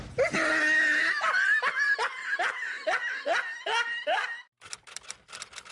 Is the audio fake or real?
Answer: real